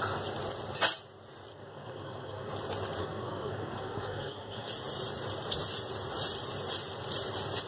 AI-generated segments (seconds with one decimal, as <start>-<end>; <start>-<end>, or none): 1.5-2.5; 3.0-4.7

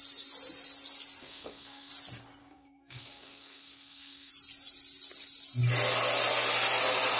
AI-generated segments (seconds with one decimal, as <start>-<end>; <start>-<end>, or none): 1.2-1.9; 2.4-4.3

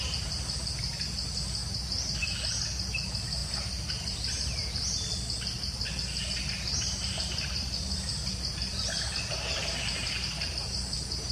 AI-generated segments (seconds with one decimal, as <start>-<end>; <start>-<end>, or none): 0.0-8.1; 9.2-11.3

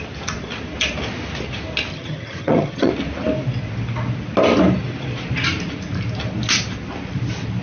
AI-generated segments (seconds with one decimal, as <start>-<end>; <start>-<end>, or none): 1.9-2.9

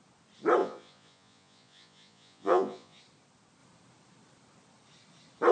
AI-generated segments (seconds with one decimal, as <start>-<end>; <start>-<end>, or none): 0.6-3.0